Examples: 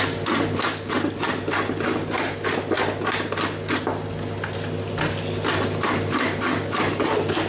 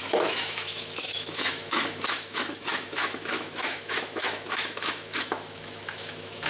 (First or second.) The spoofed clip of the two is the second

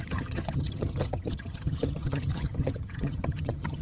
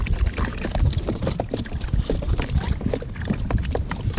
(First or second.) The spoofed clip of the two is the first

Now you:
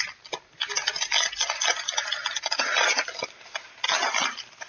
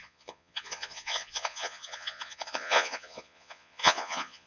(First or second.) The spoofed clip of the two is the second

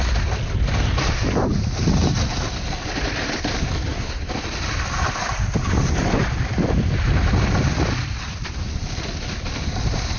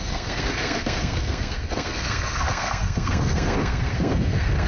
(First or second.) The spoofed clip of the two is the second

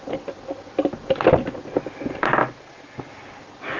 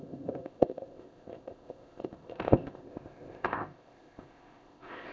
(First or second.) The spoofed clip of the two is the second